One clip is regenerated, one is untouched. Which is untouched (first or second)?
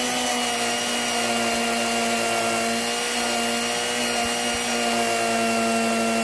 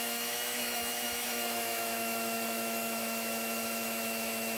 first